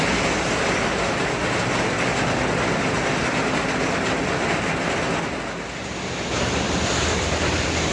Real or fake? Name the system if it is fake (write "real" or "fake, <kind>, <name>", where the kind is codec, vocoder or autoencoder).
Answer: real